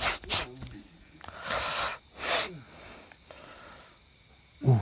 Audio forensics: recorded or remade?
recorded